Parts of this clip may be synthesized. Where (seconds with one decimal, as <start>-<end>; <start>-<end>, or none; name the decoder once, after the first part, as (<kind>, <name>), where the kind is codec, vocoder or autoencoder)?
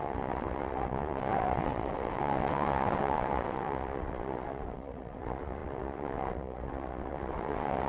0.0-7.9 (vocoder, WaveNeXt)